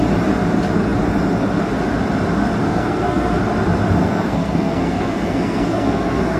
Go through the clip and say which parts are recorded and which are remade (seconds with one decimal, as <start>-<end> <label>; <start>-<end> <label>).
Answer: 0.0-2.6 recorded; 2.6-3.4 remade; 3.4-4.0 recorded; 4.0-6.4 remade